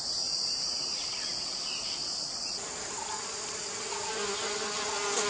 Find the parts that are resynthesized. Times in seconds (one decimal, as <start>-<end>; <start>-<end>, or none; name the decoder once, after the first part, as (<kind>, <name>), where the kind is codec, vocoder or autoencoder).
1.3-3.7 (vocoder, BigVGAN v2)

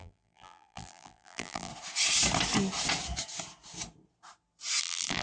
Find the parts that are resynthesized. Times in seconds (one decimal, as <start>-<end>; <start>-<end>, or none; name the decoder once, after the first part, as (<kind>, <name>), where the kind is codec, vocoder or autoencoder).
0.0-1.7 (vocoder, BigVGAN v2); 4.8-5.2

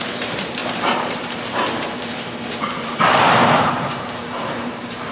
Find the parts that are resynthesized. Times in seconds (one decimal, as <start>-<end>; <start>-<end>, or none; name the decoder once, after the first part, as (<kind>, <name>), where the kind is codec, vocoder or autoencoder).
0.0-5.1 (vocoder, BigVGAN v2)

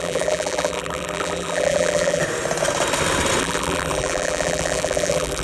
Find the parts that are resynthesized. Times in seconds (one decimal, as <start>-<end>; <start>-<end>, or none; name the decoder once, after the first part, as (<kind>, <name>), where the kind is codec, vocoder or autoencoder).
0.0-2.2 (vocoder, BigVGAN v2); 3.4-5.4